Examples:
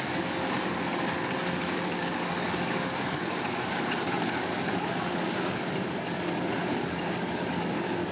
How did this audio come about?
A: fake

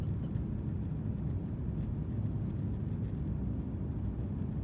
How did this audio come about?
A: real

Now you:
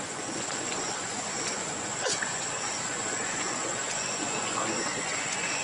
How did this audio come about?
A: fake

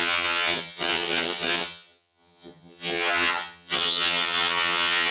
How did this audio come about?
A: fake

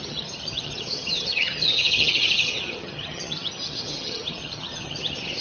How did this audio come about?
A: fake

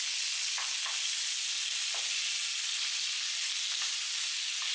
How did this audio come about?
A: real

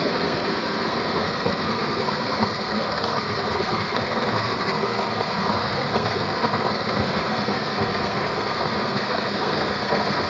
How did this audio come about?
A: fake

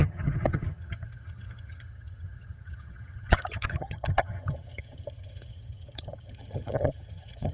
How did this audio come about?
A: fake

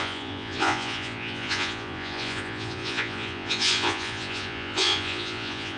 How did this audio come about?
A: fake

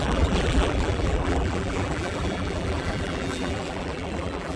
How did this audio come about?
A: fake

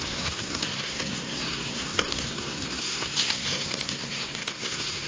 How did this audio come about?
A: fake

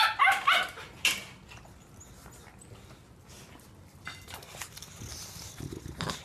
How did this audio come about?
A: real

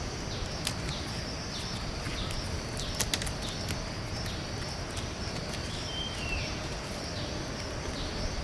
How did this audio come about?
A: real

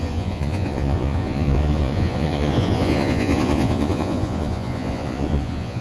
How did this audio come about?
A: fake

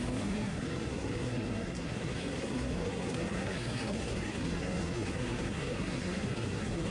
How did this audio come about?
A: fake